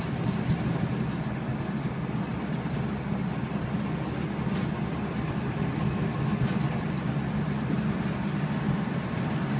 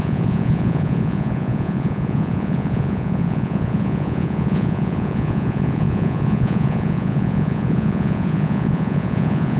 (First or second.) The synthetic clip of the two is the second